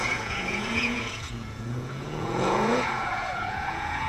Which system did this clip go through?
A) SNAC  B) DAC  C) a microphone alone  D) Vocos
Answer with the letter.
D